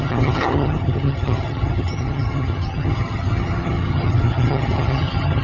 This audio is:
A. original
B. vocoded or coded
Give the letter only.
B